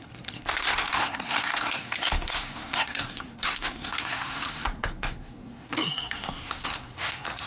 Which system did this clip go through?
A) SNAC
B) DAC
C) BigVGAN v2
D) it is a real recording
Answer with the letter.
A